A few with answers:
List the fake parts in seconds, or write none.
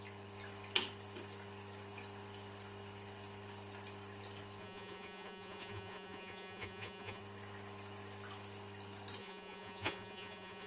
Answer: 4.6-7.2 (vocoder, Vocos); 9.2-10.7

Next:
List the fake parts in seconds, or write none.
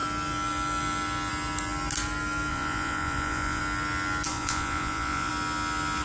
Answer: 2.5-3.6 (vocoder, Vocos); 4.3-5.3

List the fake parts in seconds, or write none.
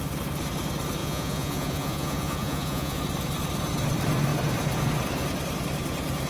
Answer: 1.0-3.0 (vocoder, Vocos)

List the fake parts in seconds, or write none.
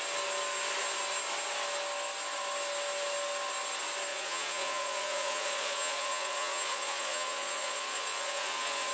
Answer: 4.1-8.9 (vocoder, Vocos)